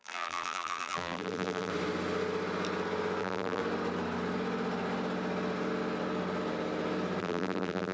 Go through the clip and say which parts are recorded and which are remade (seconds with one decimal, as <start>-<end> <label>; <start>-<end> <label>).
0.0-1.7 remade; 1.7-3.2 recorded; 3.2-3.6 remade; 3.6-7.2 recorded; 7.2-7.9 remade